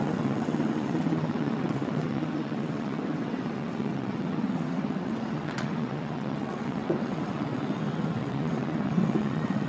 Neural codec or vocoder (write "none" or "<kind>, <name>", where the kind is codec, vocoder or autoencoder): vocoder, WaveNeXt